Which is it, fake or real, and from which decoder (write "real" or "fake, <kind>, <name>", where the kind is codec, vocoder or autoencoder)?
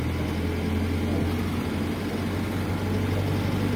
real